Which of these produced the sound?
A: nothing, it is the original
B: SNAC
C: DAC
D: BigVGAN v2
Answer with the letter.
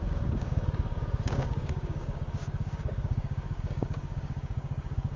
C